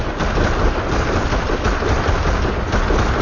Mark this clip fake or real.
real